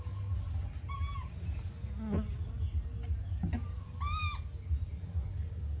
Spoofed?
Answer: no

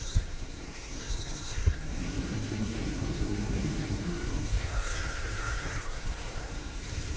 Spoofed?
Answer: yes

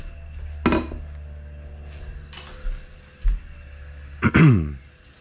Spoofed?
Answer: no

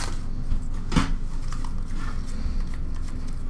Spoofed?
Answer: no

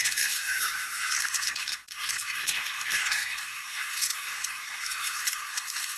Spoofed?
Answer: yes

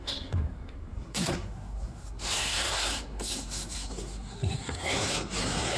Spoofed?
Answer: yes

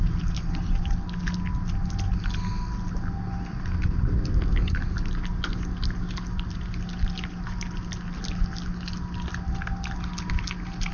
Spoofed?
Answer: no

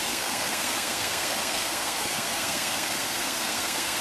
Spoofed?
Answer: yes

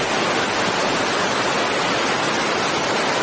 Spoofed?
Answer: no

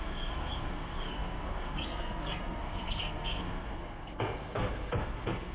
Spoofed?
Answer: yes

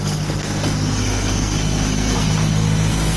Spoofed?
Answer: yes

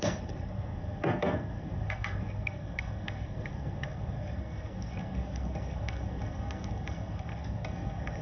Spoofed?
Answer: yes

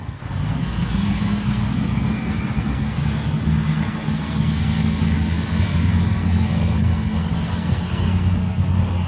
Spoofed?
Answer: yes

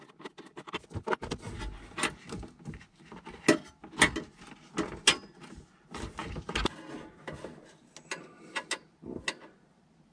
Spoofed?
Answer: no